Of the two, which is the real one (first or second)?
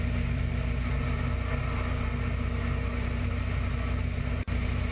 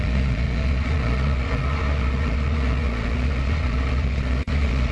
first